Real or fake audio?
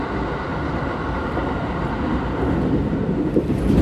fake